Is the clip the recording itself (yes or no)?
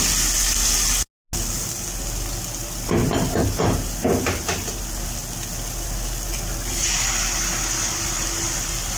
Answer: yes